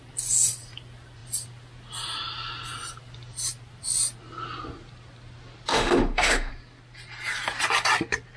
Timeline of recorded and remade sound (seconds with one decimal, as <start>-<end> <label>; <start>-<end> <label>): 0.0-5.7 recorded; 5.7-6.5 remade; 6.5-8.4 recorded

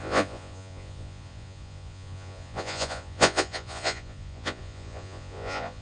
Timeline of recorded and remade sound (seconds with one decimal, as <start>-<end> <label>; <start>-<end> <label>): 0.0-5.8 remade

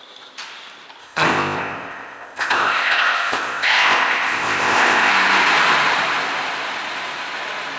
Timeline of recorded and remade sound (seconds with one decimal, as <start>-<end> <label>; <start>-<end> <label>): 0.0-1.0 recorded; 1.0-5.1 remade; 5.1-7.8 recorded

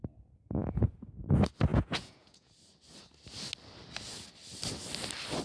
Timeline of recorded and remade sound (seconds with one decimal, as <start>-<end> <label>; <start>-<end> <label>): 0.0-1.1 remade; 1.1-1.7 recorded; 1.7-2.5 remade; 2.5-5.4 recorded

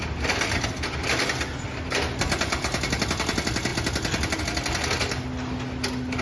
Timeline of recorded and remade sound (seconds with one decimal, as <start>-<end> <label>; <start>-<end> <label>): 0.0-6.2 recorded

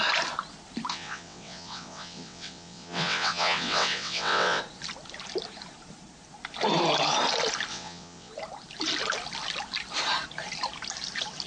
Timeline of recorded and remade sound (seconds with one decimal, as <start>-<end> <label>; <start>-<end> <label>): 0.0-0.9 recorded; 0.9-4.6 remade; 4.6-7.7 recorded; 7.7-8.3 remade; 8.3-11.5 recorded